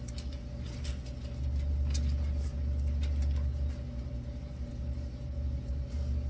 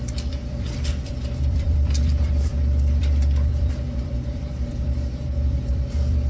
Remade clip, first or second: second